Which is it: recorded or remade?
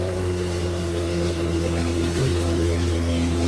remade